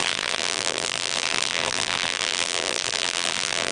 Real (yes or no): no